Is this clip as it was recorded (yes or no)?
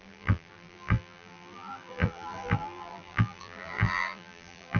no